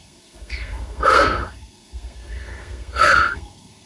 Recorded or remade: remade